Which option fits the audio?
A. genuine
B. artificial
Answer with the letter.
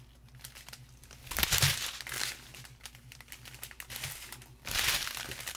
A